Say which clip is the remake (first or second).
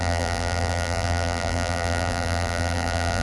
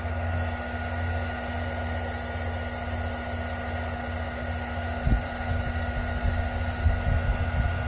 first